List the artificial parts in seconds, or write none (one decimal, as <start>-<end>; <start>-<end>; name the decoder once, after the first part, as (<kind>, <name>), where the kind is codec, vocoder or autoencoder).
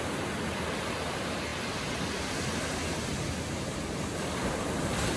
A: none